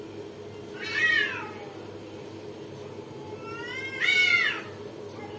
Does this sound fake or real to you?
real